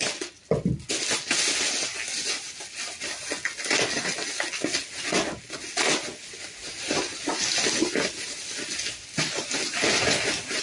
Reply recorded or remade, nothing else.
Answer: recorded